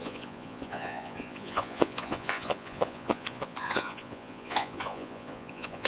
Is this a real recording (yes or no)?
no